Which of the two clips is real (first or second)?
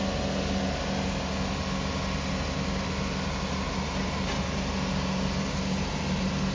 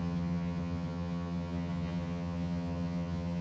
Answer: first